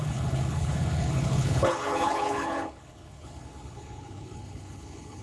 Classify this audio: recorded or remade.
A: remade